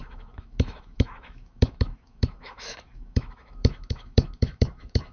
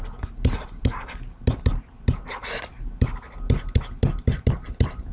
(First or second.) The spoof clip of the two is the first